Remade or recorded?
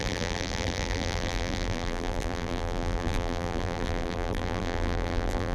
remade